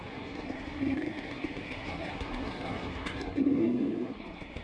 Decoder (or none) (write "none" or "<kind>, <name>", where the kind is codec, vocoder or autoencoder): codec, SNAC